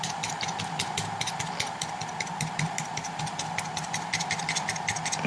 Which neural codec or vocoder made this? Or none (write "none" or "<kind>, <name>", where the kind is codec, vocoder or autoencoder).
none